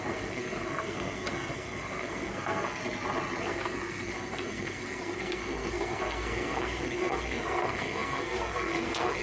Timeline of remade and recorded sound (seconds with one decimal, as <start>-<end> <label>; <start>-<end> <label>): 0.0-2.8 remade; 2.8-3.4 recorded; 3.4-9.2 remade